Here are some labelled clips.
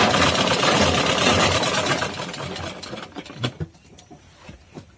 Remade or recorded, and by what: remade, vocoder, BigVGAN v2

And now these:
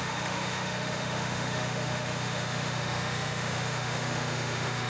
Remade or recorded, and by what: remade, autoencoder, DAC-VAE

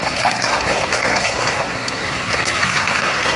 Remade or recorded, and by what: remade, codec, SNAC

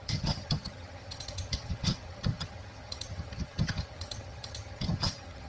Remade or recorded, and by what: remade, vocoder, HiFi-GAN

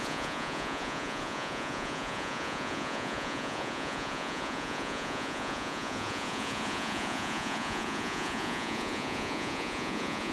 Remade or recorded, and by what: remade, vocoder, Vocos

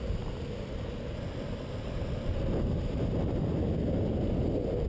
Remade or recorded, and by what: recorded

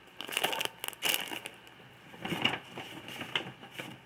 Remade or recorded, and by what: recorded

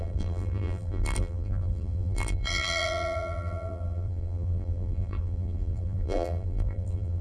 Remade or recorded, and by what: remade, vocoder, BigVGAN v2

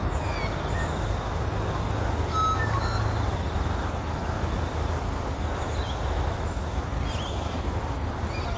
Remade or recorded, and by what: recorded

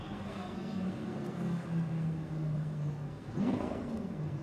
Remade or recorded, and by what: remade, codec, SNAC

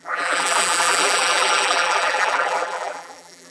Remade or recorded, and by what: remade, vocoder, BigVGAN v2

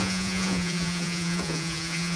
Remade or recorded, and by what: remade, vocoder, Vocos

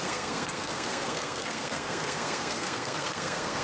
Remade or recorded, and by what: remade, codec, SNAC